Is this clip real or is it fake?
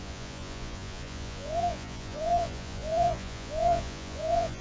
fake